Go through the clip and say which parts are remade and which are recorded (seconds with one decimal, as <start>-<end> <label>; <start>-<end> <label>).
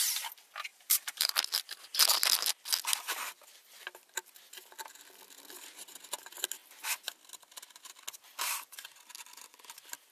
0.0-0.7 recorded; 0.7-1.3 remade; 1.3-10.1 recorded